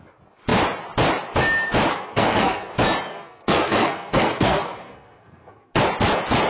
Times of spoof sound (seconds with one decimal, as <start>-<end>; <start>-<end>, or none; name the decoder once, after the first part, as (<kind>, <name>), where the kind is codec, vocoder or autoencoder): 1.9-2.7 (codec, SNAC); 3.1-5.8